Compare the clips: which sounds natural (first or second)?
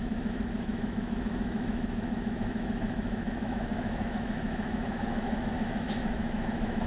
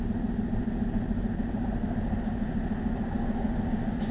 second